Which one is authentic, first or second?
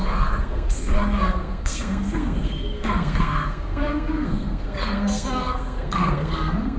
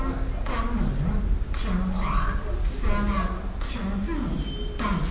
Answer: second